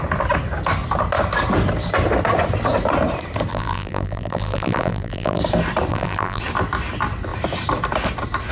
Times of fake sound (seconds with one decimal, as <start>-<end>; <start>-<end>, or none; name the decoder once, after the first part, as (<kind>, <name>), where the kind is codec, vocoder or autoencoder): 3.5-5.4 (vocoder, BigVGAN v2); 5.9-6.4